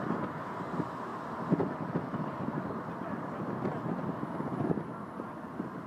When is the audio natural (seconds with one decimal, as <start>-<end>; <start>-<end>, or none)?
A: 0.0-5.9